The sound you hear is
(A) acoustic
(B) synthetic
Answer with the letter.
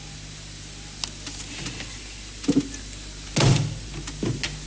A